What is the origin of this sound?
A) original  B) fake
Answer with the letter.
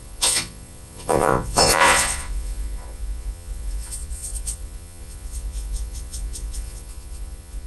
B